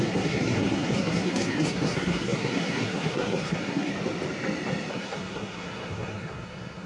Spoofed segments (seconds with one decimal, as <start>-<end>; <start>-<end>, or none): 0.0-3.9; 4.9-6.9